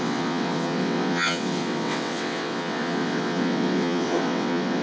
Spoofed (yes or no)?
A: yes